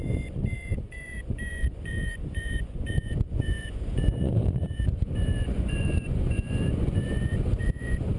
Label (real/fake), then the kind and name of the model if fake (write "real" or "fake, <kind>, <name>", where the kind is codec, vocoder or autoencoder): fake, vocoder, Vocos